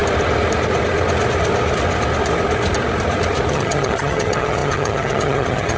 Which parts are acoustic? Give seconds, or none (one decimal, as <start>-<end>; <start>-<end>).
0.0-3.5